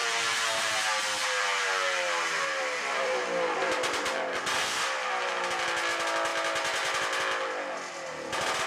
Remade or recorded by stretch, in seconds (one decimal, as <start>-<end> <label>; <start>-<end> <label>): 0.0-0.7 remade; 0.7-1.2 recorded; 1.2-4.5 remade; 4.5-8.7 recorded